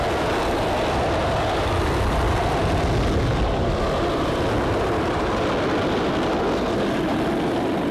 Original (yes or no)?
yes